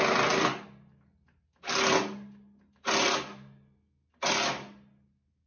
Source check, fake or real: real